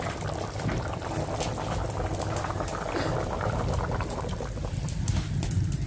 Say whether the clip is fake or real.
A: real